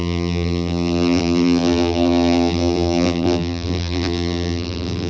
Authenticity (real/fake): fake